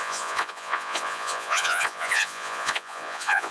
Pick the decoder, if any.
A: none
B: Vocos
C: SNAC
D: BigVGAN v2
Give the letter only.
B